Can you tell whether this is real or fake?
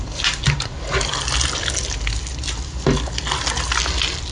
real